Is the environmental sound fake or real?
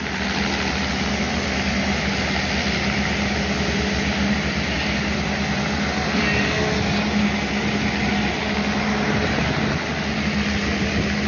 real